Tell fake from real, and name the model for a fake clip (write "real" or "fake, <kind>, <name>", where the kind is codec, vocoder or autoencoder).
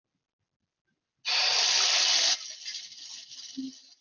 real